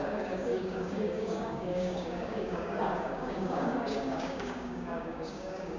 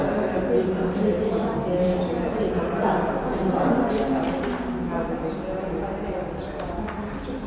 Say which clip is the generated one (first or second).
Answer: first